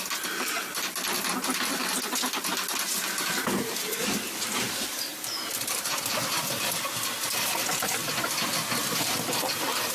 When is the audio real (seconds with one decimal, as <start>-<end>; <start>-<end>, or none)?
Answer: 0.0-5.1; 5.9-9.9